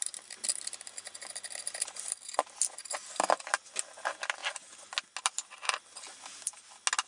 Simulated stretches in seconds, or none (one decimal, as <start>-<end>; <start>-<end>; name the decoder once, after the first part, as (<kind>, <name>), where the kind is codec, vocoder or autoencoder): none